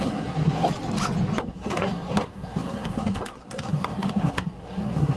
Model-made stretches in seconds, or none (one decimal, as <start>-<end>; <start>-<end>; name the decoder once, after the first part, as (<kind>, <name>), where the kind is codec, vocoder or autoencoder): 0.0-0.7 (codec, SNAC); 1.4-5.2